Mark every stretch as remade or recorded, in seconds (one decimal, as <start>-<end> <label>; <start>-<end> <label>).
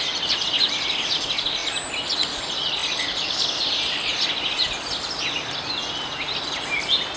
0.0-7.2 recorded